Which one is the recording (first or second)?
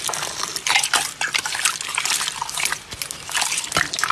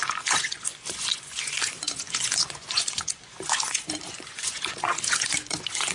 first